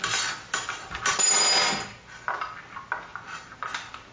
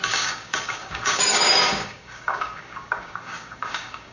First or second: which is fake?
second